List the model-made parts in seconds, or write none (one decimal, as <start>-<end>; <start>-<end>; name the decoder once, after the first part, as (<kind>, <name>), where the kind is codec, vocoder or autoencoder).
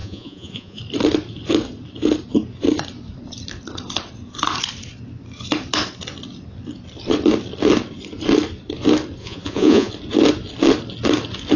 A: 0.0-0.8 (vocoder, Vocos); 9.2-9.9